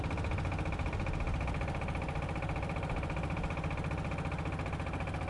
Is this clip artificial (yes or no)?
no